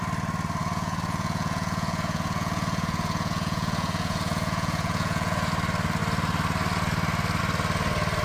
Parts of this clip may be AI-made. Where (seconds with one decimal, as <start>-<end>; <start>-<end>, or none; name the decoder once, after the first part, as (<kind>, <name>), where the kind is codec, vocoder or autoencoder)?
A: 0.6-5.5 (vocoder, Vocos)